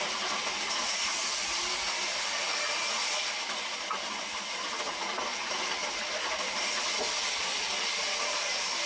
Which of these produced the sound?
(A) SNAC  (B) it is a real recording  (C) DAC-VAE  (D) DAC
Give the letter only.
B